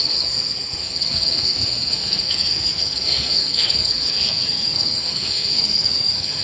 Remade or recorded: remade